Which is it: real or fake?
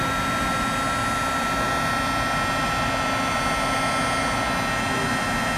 real